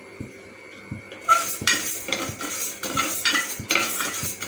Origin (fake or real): fake